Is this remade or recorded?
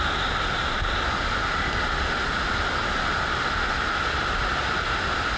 recorded